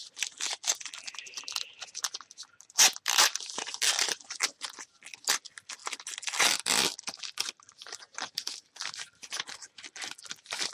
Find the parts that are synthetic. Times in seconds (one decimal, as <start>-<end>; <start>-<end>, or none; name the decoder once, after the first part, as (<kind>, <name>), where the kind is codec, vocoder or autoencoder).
none